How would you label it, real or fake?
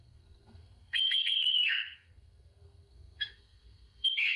fake